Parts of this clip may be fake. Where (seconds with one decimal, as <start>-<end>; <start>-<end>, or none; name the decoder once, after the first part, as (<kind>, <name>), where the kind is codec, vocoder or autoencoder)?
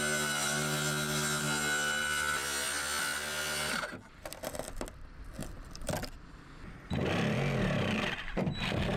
5.4-6.3 (vocoder, BigVGAN v2)